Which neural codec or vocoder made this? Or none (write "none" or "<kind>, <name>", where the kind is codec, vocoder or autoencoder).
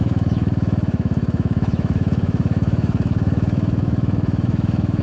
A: autoencoder, DAC-VAE